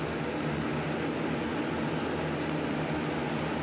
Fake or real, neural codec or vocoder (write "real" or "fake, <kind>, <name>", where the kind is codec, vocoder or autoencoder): real